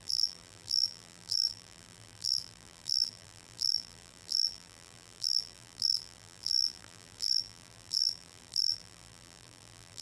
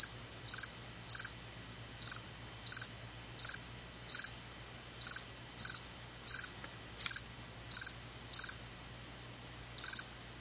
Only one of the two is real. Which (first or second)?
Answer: second